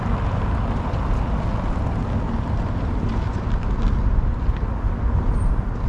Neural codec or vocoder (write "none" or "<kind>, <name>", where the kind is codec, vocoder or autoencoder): none